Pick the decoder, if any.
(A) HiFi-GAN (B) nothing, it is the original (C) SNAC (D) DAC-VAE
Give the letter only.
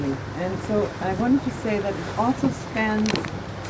B